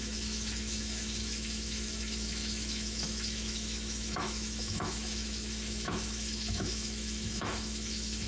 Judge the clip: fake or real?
fake